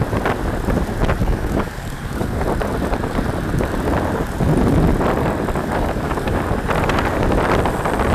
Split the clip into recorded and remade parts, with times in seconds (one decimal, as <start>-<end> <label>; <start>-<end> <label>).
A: 0.0-1.2 recorded; 1.2-2.4 remade; 2.4-5.6 recorded; 5.6-6.4 remade; 6.4-8.1 recorded